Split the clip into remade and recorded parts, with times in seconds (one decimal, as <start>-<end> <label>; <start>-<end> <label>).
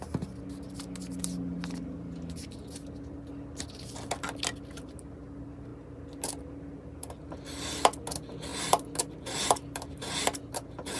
0.0-11.0 recorded